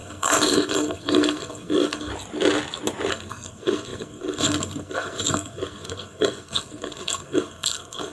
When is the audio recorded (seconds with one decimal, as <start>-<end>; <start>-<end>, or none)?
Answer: 2.1-3.1